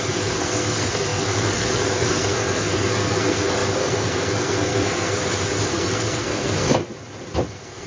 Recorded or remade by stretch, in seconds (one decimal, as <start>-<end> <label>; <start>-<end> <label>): 0.0-5.2 remade; 5.2-5.7 recorded; 5.7-6.8 remade; 6.8-7.5 recorded; 7.5-7.9 remade